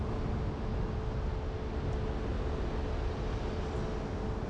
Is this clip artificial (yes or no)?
no